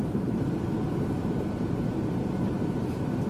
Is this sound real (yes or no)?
no